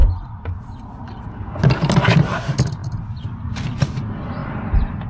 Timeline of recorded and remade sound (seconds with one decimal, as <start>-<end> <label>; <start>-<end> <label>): 0.0-4.4 recorded; 4.4-5.1 remade